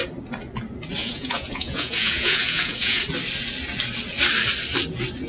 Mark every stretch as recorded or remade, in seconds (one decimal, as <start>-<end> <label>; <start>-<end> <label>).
0.0-1.0 recorded; 1.0-3.0 remade; 3.0-5.3 recorded